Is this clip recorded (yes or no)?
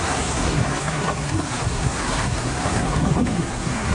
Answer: no